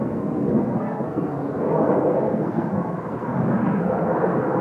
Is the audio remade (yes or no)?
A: yes